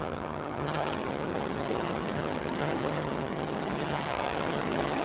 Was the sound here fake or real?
fake